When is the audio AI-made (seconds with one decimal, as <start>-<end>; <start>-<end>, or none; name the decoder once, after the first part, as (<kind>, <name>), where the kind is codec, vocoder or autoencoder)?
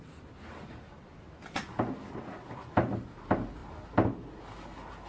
none